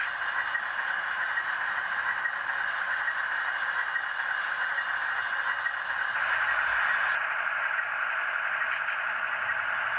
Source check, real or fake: real